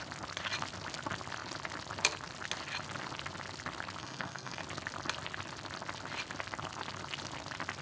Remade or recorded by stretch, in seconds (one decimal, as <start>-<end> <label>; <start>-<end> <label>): 0.0-4.0 recorded; 4.0-4.6 remade; 4.6-7.8 recorded